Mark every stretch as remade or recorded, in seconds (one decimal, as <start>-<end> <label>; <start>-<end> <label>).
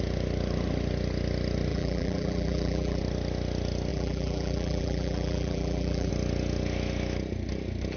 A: 0.0-1.7 recorded; 1.7-3.0 remade; 3.0-3.9 recorded; 3.9-6.1 remade; 6.1-8.0 recorded